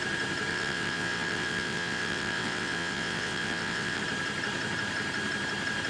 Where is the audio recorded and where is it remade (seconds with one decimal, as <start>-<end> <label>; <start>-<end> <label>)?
0.0-0.5 recorded; 0.5-4.0 remade; 4.0-5.9 recorded